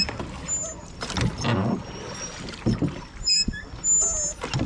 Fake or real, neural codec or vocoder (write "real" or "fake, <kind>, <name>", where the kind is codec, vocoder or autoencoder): real